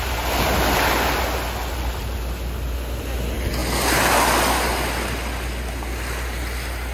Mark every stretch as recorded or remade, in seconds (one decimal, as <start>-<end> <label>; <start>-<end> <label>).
0.0-6.9 recorded